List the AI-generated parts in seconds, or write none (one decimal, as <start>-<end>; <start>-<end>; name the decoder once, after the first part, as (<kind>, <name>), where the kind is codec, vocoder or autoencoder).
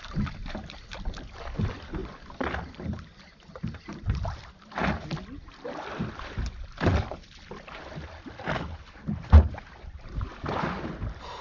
none